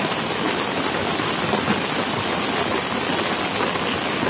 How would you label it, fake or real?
real